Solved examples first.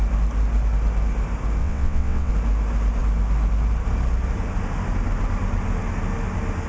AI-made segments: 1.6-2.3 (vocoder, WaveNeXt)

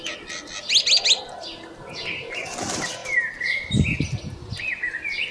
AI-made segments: none

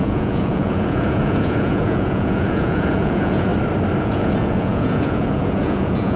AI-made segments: 0.0-3.5 (vocoder, Vocos); 4.0-6.2

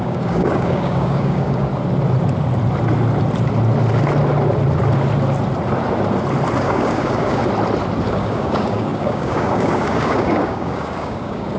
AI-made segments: 0.0-1.7 (codec, DAC); 6.6-7.4; 8.1-11.6

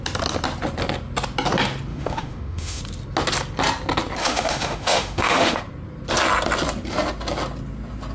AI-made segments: 1.9-2.8 (autoencoder, DAC-VAE); 4.2-5.6

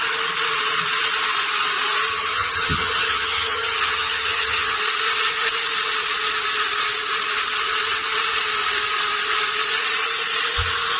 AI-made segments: 2.1-4.8 (vocoder, HiFi-GAN)

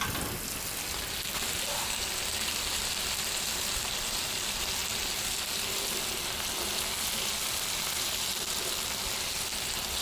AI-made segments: none

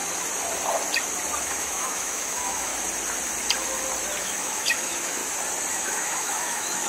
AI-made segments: 1.4-2.7 (autoencoder, DAC-VAE); 4.2-5.2; 5.7-6.9